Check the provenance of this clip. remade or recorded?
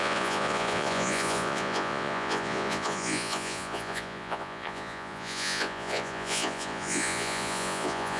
remade